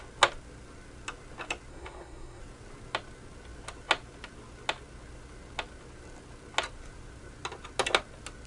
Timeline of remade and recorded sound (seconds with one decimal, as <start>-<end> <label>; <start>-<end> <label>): 0.0-1.7 recorded; 1.7-2.4 remade; 2.4-8.5 recorded